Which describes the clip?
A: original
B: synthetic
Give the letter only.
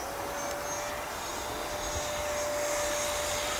A